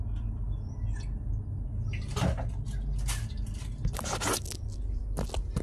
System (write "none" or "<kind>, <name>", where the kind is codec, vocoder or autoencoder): none